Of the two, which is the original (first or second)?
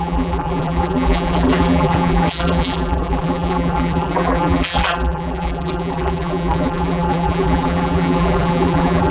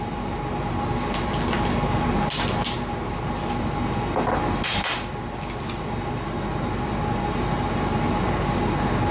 second